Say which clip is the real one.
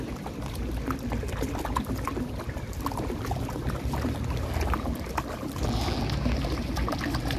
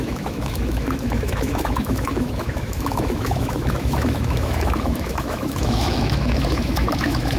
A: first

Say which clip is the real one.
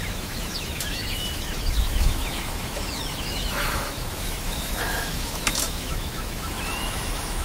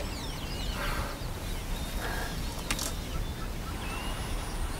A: second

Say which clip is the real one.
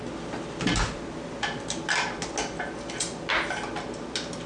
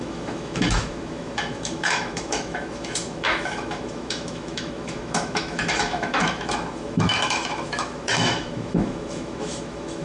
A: first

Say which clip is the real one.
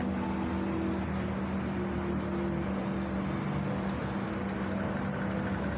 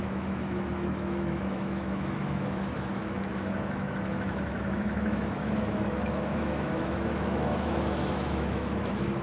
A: first